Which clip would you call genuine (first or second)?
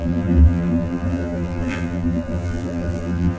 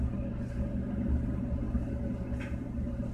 second